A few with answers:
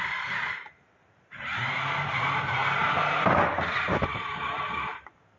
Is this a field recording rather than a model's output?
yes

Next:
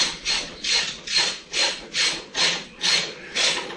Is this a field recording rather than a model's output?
no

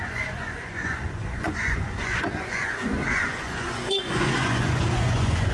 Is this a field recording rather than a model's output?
no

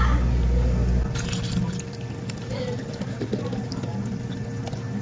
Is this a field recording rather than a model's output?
yes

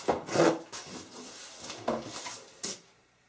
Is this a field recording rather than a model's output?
yes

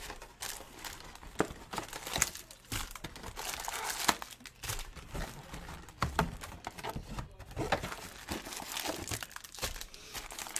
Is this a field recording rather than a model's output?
yes